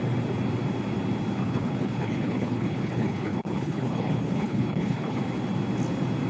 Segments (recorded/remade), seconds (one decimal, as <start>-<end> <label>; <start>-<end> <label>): 0.0-1.4 recorded; 1.4-5.2 remade; 5.2-6.3 recorded